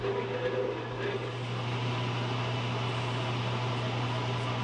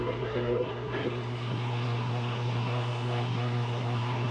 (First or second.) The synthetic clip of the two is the second